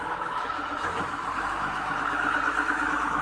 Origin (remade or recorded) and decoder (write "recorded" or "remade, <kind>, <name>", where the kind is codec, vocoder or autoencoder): remade, autoencoder, DAC-VAE